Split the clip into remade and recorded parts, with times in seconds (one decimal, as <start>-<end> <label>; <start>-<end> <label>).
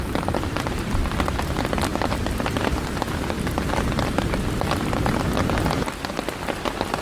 0.0-1.9 recorded; 1.9-3.7 remade; 3.7-7.0 recorded